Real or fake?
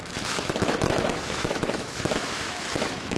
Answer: fake